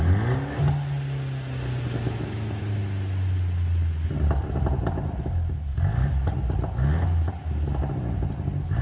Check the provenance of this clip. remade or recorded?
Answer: recorded